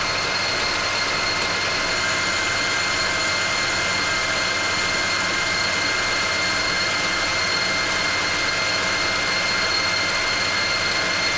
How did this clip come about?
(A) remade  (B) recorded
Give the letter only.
B